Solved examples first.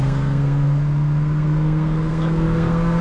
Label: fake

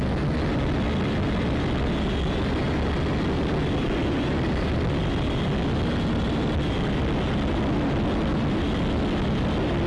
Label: real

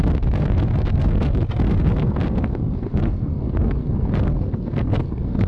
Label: fake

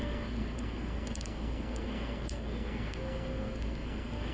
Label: fake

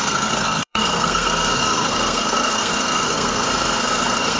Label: fake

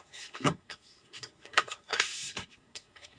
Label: fake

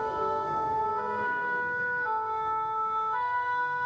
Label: fake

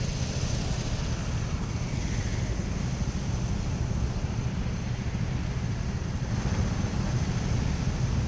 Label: real